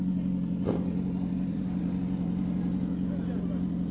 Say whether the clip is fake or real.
real